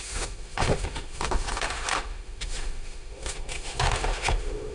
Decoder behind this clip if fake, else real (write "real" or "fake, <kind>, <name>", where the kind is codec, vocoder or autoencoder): fake, autoencoder, DAC-VAE